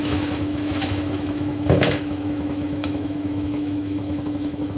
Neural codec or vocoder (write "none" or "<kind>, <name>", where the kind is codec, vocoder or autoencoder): autoencoder, DAC-VAE